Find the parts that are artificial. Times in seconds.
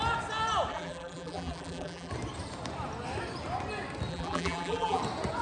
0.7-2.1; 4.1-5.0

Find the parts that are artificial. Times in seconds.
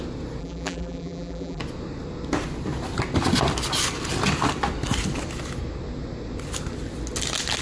0.4-1.6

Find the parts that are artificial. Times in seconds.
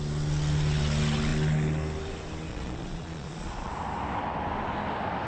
2.5-3.7